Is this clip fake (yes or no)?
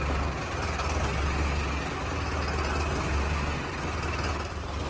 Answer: no